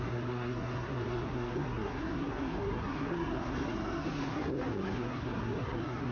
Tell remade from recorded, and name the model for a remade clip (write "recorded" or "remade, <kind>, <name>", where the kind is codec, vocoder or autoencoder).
remade, codec, SNAC